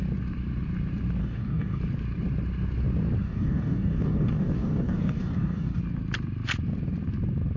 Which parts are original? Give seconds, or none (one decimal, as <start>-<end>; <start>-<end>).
0.0-1.2; 1.8-3.2; 5.8-7.6